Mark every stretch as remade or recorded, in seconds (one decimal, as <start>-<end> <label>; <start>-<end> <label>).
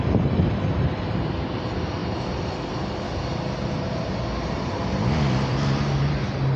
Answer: 0.0-6.6 recorded